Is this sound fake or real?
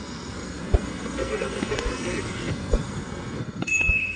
fake